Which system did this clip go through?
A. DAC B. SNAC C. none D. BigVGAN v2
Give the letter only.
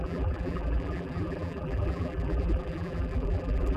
D